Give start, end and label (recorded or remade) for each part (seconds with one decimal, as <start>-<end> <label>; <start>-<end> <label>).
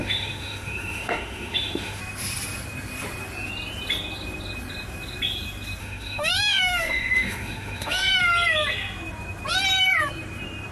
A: 0.0-2.0 remade; 2.0-5.8 recorded; 5.8-8.2 remade; 8.2-10.7 recorded